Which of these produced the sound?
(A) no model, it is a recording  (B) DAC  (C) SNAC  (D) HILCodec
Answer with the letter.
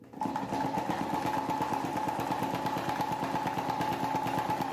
A